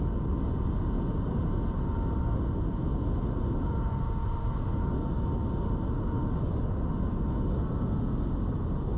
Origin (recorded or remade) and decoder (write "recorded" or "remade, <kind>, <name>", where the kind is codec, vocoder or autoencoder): recorded